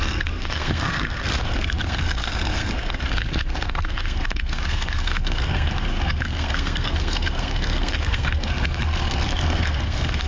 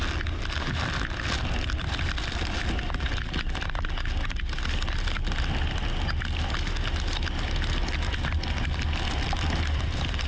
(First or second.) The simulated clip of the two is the first